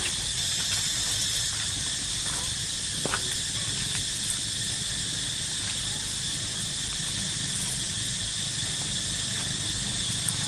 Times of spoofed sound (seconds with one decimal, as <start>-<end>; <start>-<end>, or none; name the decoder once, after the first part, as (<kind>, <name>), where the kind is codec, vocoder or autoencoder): none

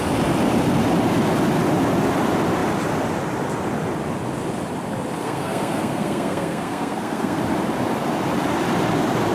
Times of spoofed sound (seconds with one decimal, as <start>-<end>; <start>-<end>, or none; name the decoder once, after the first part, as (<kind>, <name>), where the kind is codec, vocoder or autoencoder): 5.2-7.4 (codec, SNAC)

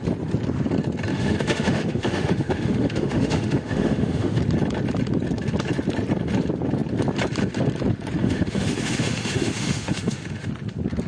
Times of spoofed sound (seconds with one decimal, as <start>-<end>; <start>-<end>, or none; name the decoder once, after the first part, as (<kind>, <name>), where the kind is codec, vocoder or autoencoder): 1.1-4.4 (autoencoder, DAC-VAE); 8.2-10.5

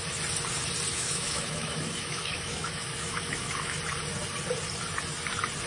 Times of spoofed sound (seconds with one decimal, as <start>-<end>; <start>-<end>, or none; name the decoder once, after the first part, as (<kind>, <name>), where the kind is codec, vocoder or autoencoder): 0.9-3.8 (autoencoder, DAC-VAE)

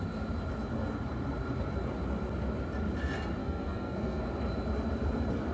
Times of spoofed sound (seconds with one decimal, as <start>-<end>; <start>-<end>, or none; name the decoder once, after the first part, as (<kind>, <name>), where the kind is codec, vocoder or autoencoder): 3.4-4.2 (codec, SNAC)

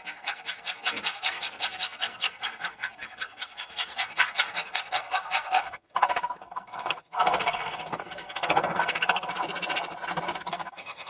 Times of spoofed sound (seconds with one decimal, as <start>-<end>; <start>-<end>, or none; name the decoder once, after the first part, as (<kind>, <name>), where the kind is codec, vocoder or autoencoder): 0.0-9.3 (codec, SNAC); 10.5-11.1

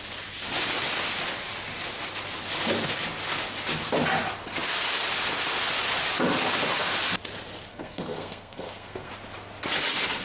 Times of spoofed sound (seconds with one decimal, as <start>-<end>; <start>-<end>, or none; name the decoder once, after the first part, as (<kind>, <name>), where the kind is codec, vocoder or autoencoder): 7.7-9.1 (codec, SNAC)